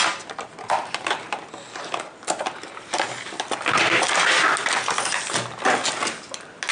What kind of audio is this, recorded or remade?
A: recorded